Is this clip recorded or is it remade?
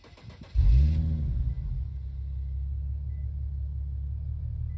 recorded